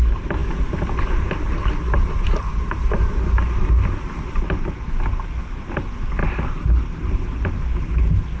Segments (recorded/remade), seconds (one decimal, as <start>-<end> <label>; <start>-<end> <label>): 0.0-8.4 recorded